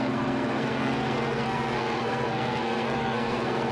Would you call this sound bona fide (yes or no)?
no